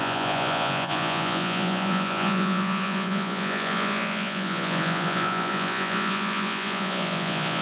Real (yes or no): no